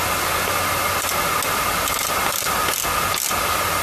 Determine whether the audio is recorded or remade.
recorded